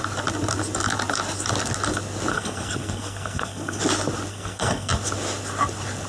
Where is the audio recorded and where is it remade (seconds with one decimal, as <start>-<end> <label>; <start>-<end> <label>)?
0.0-2.3 recorded; 2.3-3.8 remade; 3.8-4.3 recorded; 4.3-4.9 remade; 4.9-6.1 recorded